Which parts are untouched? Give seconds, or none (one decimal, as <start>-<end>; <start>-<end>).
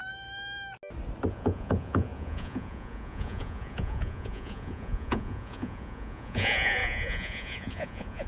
0.0-1.3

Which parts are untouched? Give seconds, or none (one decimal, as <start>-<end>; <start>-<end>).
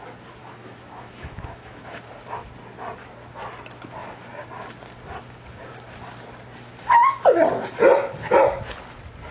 0.0-0.4; 2.1-9.3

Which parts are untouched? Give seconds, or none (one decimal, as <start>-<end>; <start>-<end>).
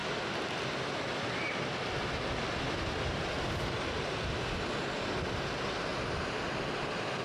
0.0-7.2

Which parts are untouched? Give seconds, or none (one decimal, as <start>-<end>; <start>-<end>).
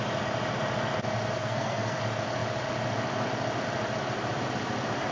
0.0-1.4; 2.0-5.1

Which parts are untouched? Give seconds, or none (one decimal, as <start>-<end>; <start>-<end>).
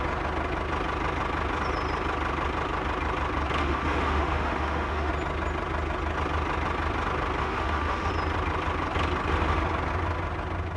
0.0-3.6; 5.1-7.4; 8.1-10.8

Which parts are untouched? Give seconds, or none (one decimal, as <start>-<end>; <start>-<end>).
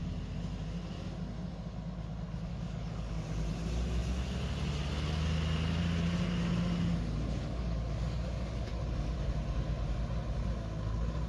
0.0-2.5; 3.1-7.4; 8.7-11.3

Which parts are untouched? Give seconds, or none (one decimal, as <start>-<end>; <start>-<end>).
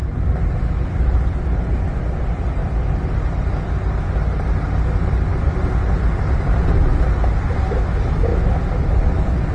0.0-9.5